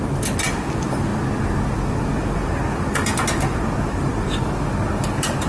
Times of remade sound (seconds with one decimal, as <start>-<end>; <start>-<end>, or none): none